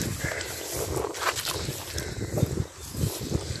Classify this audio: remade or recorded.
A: recorded